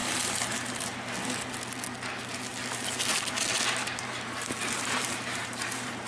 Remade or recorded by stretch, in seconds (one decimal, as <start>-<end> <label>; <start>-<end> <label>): 0.0-0.9 remade; 0.9-4.6 recorded; 4.6-6.1 remade